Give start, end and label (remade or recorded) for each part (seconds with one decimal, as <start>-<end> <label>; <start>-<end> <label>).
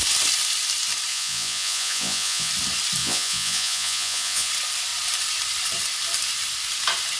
0.0-1.1 recorded; 1.1-2.5 remade; 2.5-3.0 recorded; 3.0-4.5 remade; 4.5-7.2 recorded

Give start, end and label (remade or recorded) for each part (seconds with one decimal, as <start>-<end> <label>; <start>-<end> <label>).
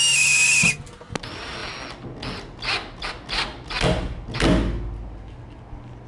0.0-6.1 recorded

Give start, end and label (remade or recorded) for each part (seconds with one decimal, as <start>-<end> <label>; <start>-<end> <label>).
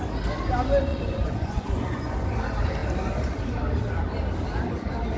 0.0-0.9 recorded; 0.9-2.3 remade; 2.3-5.2 recorded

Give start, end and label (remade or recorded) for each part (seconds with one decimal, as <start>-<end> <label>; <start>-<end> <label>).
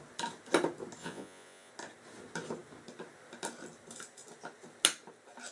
0.0-1.0 recorded; 1.0-1.7 remade; 1.7-5.5 recorded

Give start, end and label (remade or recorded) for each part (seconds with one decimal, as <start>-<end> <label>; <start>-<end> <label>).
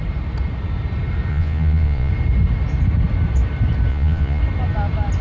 0.0-1.3 recorded; 1.3-2.1 remade; 2.1-3.9 recorded; 3.9-4.4 remade; 4.4-5.2 recorded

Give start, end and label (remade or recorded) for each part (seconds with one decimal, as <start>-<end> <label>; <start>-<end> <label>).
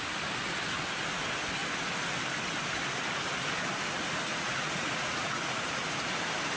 0.0-4.3 recorded; 4.3-5.6 remade; 5.6-6.6 recorded